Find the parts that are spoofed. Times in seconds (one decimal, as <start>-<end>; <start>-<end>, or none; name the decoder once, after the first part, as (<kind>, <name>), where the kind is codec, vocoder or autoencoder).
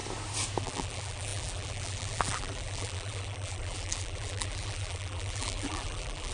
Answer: 0.6-6.3 (vocoder, BigVGAN v2)